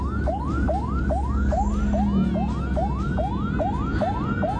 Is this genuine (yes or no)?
yes